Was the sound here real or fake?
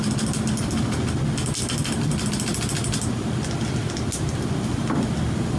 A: real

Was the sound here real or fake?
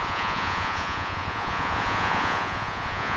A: fake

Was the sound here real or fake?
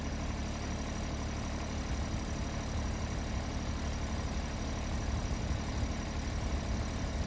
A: real